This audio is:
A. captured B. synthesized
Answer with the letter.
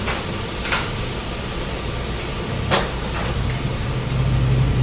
A